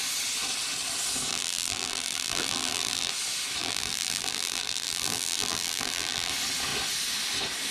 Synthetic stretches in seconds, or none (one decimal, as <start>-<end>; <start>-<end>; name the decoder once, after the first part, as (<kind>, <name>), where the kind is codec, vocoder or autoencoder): 1.3-3.1 (vocoder, BigVGAN v2); 3.6-6.3